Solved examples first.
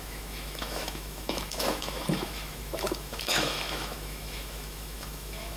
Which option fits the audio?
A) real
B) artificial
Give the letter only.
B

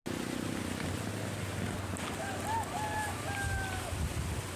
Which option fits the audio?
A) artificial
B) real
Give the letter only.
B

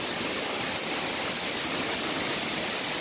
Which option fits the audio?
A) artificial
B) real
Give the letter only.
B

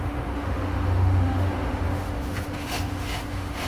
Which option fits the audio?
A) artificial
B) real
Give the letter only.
A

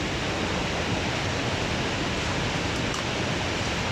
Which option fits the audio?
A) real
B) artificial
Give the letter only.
A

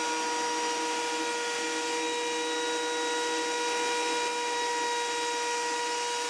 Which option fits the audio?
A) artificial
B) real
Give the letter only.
B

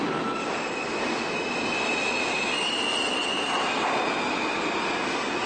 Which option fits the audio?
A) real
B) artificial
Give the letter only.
A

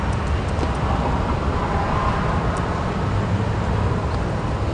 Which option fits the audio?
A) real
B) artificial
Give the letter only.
A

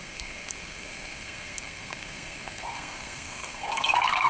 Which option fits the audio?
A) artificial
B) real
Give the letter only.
A